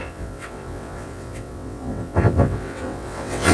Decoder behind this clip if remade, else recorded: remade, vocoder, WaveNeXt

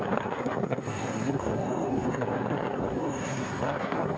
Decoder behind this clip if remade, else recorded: remade, codec, SNAC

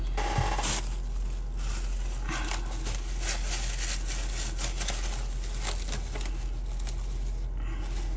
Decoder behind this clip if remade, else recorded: recorded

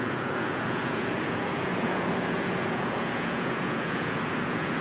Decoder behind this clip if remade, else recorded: remade, vocoder, Vocos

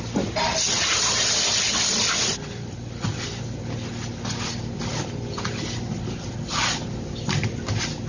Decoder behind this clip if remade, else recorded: recorded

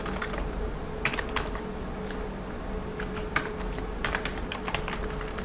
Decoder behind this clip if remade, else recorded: recorded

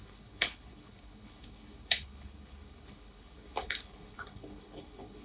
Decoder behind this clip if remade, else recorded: remade, codec, HILCodec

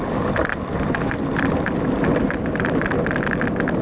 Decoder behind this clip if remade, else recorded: recorded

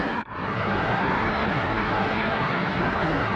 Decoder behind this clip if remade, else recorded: remade, codec, SNAC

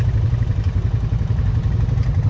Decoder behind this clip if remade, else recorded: recorded